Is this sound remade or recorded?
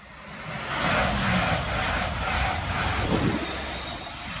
recorded